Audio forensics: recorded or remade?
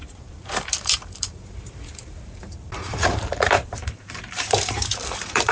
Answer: remade